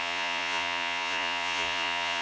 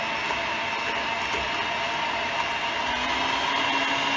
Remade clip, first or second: first